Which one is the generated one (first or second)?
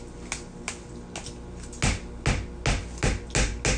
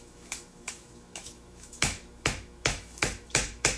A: second